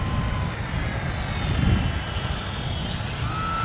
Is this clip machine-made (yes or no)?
no